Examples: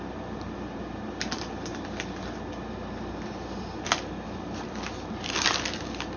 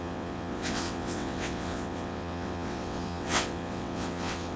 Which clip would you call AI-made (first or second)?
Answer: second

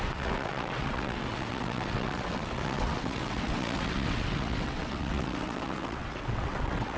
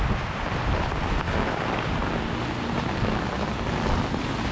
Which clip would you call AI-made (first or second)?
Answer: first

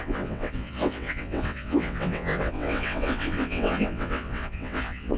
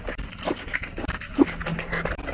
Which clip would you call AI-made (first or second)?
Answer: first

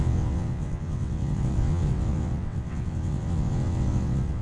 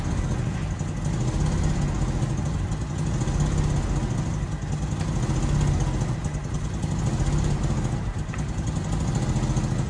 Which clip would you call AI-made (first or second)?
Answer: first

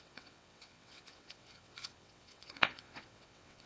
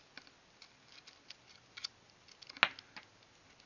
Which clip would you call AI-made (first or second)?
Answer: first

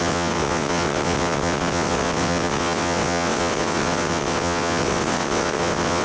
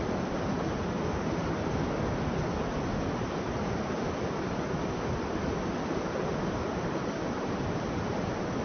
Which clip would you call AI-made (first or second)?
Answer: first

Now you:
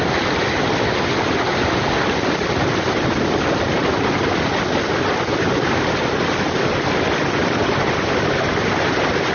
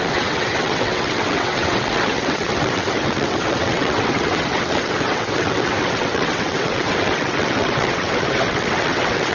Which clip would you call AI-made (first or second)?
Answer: second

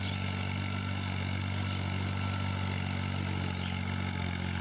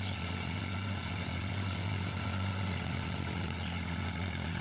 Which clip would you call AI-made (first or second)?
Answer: second